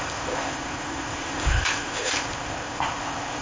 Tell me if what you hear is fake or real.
fake